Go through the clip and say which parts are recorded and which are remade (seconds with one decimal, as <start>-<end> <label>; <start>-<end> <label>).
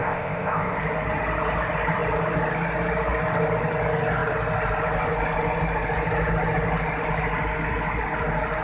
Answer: 0.0-0.8 remade; 0.8-8.6 recorded